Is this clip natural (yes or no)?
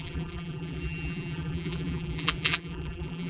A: no